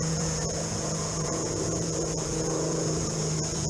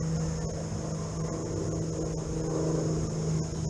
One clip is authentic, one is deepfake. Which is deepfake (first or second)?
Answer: first